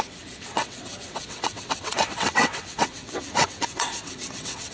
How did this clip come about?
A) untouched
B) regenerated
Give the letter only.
B